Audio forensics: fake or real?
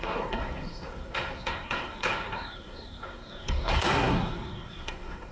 fake